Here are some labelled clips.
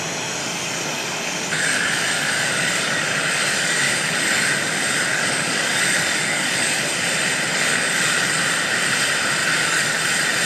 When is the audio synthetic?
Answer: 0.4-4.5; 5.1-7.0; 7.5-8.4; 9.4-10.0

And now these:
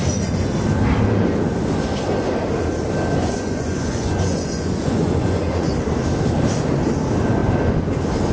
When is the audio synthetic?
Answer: 3.2-5.7